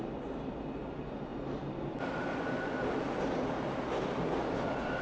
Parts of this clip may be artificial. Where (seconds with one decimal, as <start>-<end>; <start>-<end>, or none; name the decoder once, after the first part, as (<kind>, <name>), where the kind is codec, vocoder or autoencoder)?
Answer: 1.3-4.3 (vocoder, BigVGAN v2)